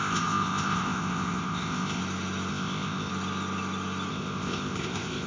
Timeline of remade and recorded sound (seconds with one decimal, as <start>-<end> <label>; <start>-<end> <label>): 0.0-2.0 remade; 2.0-2.5 recorded; 2.5-3.1 remade; 3.1-4.1 recorded; 4.1-5.3 remade